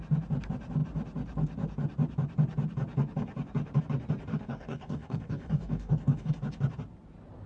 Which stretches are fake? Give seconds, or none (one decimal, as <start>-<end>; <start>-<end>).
4.3-6.3